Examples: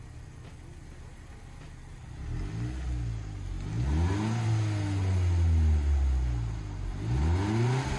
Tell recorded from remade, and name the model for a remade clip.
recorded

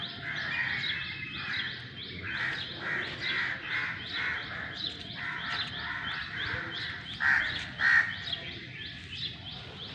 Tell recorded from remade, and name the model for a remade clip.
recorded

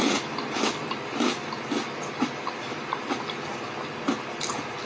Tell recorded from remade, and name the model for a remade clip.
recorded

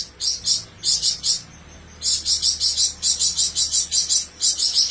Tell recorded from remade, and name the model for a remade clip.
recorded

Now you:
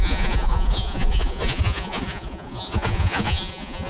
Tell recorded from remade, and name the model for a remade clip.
remade, vocoder, Vocos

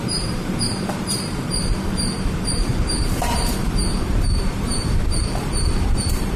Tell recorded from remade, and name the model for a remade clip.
remade, vocoder, BigVGAN v2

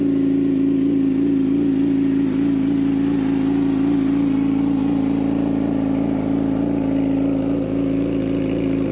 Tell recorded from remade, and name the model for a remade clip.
recorded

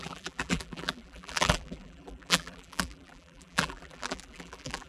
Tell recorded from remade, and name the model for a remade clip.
remade, vocoder, BigVGAN v2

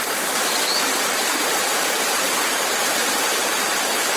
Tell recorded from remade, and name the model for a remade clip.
remade, vocoder, BigVGAN v2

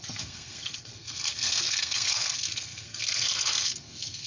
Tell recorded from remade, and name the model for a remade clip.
remade, codec, SNAC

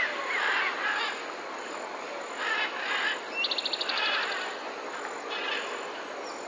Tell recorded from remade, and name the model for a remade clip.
recorded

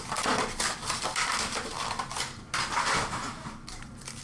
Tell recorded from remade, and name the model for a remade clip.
recorded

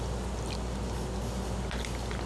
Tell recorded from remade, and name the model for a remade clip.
recorded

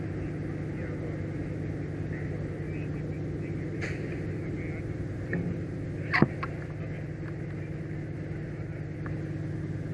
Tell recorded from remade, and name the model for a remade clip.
recorded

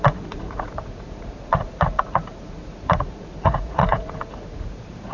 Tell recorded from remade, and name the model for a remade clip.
remade, vocoder, Vocos